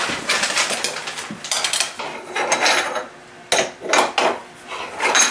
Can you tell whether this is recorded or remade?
recorded